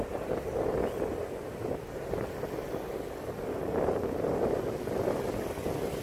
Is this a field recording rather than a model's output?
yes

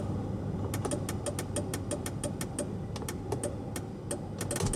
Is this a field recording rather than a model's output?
yes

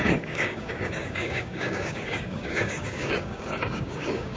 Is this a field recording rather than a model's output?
no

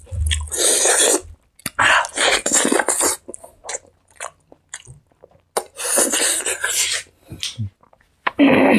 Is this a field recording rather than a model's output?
yes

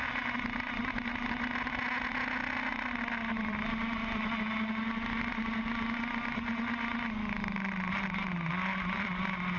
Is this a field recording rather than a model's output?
yes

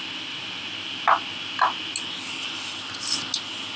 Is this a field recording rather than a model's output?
yes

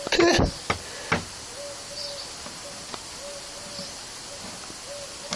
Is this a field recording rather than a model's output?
yes